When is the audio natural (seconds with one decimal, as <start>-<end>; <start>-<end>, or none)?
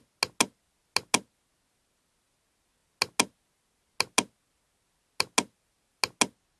0.0-6.6